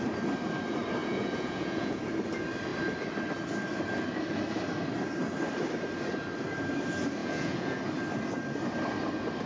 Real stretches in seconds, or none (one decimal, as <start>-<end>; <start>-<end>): 0.0-1.0; 2.0-7.2; 7.8-9.5